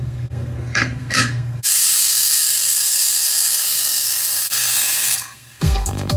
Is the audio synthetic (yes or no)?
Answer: yes